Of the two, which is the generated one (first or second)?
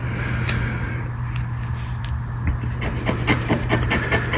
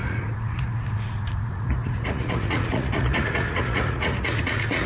second